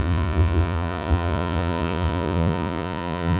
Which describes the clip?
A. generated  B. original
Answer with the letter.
A